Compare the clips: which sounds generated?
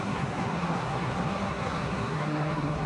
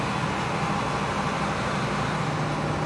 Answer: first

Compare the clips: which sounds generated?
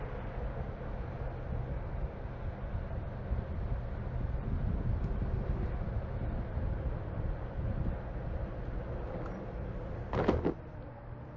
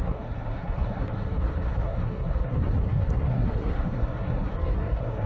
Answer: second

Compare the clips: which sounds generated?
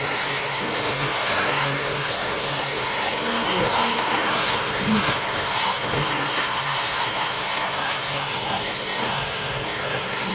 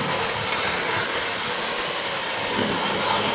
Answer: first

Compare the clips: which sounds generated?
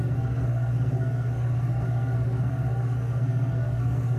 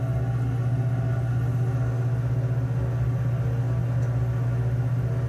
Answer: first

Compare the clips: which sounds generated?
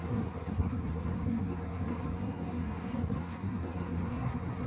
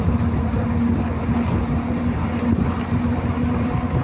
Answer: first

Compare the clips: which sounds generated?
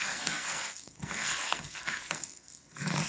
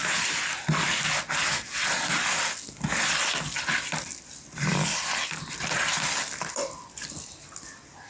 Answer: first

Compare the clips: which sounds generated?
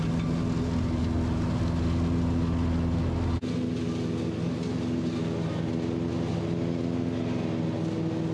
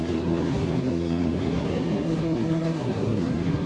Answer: second